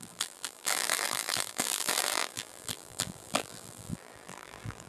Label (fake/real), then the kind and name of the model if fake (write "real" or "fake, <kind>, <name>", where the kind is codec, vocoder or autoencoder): fake, vocoder, BigVGAN v2